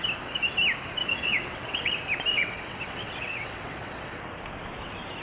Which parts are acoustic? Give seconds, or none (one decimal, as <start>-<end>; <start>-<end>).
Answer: 0.0-1.0; 1.9-2.3; 4.2-5.2